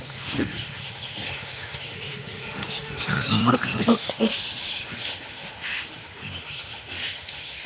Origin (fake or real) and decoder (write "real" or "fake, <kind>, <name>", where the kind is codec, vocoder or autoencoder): fake, autoencoder, DAC-VAE